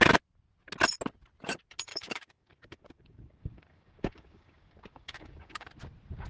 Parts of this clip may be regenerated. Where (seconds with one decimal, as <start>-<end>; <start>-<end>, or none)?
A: 1.9-5.7